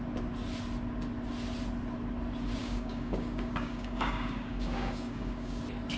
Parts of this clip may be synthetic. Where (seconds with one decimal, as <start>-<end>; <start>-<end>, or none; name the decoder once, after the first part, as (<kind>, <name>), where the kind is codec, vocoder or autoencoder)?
2.6-5.6 (codec, DAC)